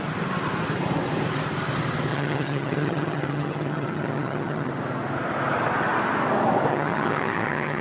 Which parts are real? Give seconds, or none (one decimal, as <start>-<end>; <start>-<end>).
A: 0.0-2.1; 4.7-6.7